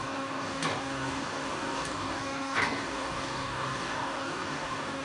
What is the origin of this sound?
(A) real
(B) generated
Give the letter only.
B